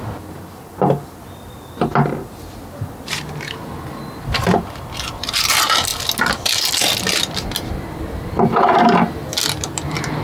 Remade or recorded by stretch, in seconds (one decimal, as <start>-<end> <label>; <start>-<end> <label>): 0.0-10.2 recorded